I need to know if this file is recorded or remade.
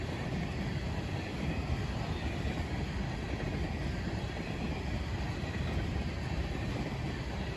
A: recorded